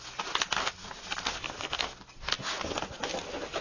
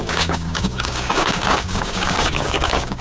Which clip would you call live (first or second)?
first